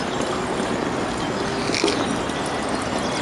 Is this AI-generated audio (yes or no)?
no